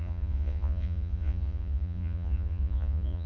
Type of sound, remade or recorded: remade